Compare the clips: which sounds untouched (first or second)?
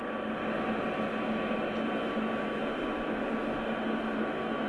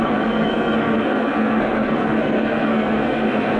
first